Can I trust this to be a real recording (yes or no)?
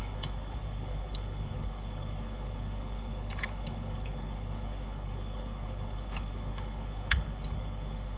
no